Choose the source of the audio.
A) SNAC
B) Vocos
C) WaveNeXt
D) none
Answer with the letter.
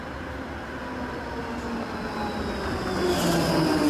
D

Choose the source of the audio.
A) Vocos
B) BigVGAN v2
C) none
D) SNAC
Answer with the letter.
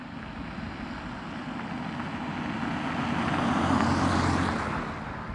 C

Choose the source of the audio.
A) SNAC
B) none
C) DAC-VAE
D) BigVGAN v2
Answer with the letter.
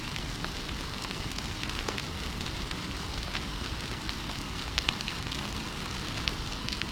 A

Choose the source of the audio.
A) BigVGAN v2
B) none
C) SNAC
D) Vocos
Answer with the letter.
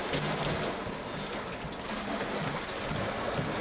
B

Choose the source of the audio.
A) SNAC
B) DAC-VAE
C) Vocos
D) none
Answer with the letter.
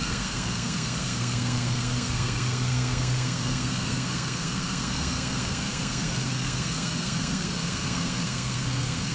A